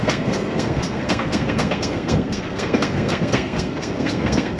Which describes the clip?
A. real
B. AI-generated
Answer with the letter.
B